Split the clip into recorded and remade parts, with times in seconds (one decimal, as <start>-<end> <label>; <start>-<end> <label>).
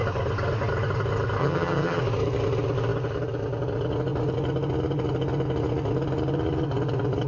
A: 0.0-1.4 recorded; 1.4-2.0 remade; 2.0-7.3 recorded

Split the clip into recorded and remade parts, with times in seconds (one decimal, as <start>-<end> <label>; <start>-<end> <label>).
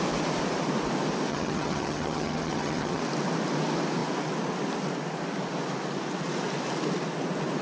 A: 0.0-1.3 recorded; 1.3-3.0 remade; 3.0-7.6 recorded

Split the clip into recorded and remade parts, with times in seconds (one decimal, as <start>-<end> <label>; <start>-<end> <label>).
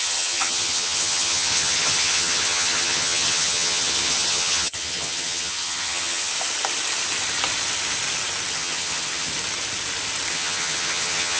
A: 0.0-6.3 remade; 6.3-8.5 recorded; 8.5-9.3 remade; 9.3-10.3 recorded; 10.3-11.4 remade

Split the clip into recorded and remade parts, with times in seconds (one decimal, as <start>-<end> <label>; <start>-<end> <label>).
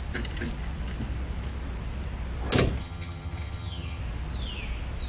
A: 0.0-2.8 recorded; 2.8-4.0 remade; 4.0-5.1 recorded